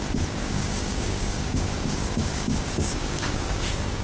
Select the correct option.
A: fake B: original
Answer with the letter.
A